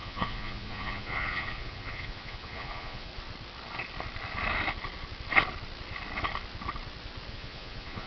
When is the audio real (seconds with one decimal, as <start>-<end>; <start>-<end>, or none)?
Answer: 3.1-7.3